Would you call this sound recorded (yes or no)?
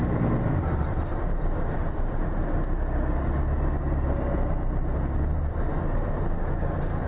yes